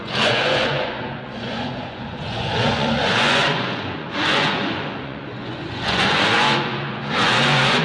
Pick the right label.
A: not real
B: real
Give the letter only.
A